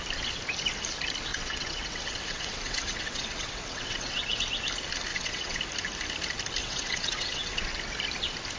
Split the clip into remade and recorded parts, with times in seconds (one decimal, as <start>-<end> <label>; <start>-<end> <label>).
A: 0.0-1.3 recorded; 1.3-4.4 remade; 4.4-5.1 recorded; 5.1-5.6 remade; 5.6-6.6 recorded; 6.6-7.7 remade; 7.7-8.6 recorded